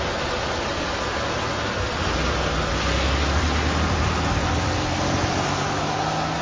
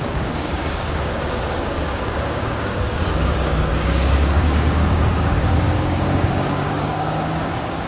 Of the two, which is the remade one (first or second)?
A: second